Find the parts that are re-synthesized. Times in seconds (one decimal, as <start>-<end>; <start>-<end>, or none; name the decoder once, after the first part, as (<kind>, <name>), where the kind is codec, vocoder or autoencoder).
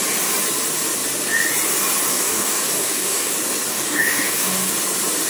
2.1-3.3 (codec, DAC); 3.7-4.7